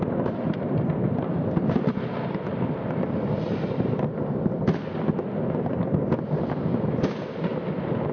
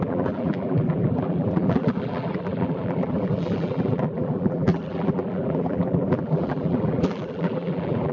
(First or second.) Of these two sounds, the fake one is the second